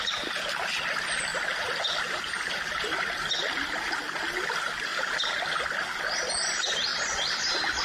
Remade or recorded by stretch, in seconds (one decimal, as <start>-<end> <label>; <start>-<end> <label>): 0.0-7.8 recorded